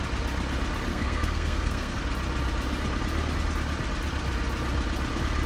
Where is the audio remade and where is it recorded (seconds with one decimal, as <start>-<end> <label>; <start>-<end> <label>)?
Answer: 0.0-0.9 recorded; 0.9-2.0 remade; 2.0-5.5 recorded